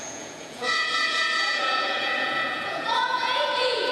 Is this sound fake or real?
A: fake